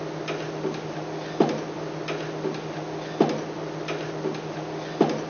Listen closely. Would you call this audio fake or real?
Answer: real